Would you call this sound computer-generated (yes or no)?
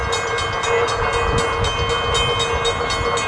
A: no